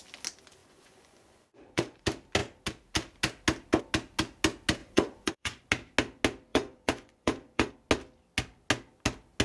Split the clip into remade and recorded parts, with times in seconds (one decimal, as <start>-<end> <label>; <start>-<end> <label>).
0.0-0.6 recorded; 0.6-2.0 remade; 2.0-4.8 recorded; 4.8-5.6 remade; 5.6-6.5 recorded; 6.5-7.7 remade; 7.7-9.4 recorded